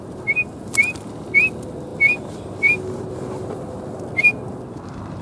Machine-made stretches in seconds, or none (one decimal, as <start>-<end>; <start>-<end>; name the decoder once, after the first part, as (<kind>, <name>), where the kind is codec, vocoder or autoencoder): none

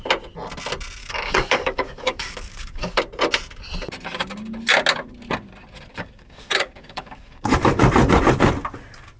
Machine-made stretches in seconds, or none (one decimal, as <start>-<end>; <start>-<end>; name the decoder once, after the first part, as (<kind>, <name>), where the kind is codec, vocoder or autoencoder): 1.0-3.0 (codec, DAC); 5.9-7.8

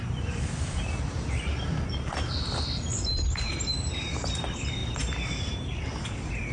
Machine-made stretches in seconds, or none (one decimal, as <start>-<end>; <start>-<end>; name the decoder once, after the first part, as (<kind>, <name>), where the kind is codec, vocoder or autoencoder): 0.0-4.8 (vocoder, BigVGAN v2); 5.4-6.5

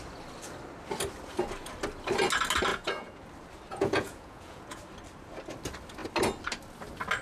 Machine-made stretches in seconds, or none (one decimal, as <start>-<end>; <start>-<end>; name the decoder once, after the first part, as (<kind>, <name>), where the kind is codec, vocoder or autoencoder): 2.7-3.2 (vocoder, Vocos); 3.7-4.8

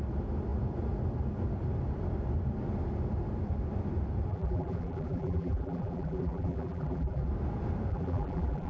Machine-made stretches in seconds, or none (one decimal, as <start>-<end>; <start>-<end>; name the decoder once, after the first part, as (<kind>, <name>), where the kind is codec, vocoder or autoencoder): 4.3-7.3 (vocoder, BigVGAN v2); 7.9-8.7

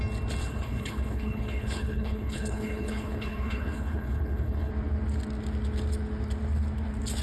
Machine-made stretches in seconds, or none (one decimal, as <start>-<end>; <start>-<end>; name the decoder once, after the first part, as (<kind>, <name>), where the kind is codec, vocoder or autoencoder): 0.4-4.7 (codec, HILCodec)